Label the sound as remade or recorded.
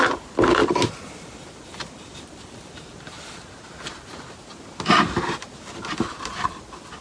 recorded